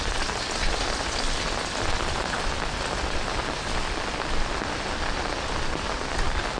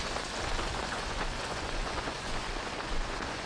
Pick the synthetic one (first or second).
second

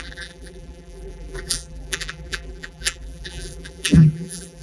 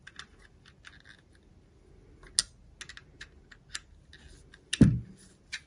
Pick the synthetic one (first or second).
first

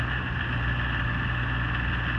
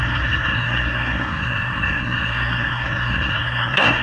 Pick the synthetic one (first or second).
second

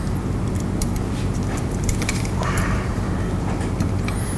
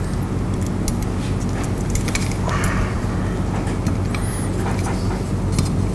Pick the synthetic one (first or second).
first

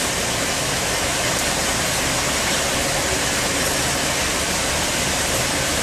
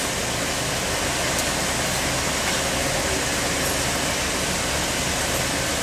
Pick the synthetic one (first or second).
first